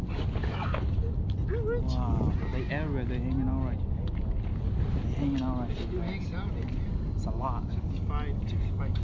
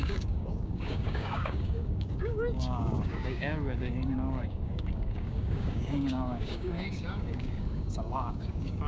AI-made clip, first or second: second